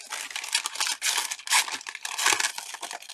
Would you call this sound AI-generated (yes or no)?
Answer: no